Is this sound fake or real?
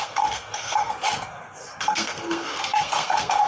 fake